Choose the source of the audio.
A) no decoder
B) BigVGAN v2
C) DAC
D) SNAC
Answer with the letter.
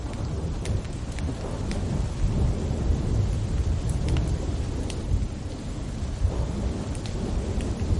A